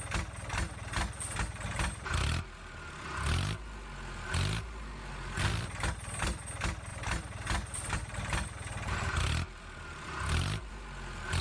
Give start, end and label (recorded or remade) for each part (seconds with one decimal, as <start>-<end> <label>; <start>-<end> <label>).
0.0-6.9 recorded; 6.9-10.7 remade; 10.7-11.4 recorded